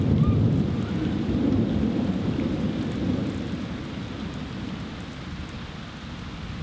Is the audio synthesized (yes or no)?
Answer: no